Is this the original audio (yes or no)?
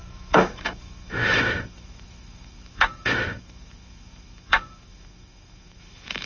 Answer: no